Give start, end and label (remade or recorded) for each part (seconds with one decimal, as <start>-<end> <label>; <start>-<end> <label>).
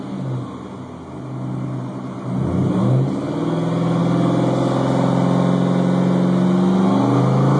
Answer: 0.0-7.6 recorded